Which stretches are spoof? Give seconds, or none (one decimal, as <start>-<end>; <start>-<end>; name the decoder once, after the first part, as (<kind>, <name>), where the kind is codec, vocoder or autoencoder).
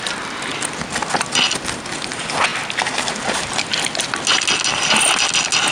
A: none